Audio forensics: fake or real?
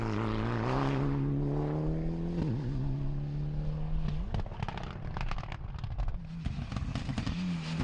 real